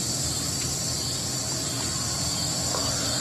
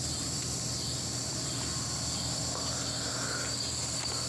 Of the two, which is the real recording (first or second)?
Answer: second